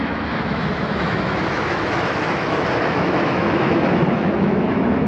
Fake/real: fake